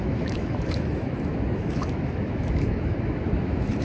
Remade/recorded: remade